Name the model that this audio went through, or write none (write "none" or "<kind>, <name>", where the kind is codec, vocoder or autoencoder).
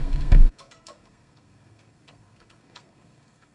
codec, SNAC